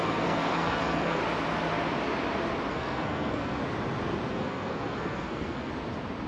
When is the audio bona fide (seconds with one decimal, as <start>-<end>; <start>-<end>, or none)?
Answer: 1.2-2.7; 3.6-4.3; 5.7-6.3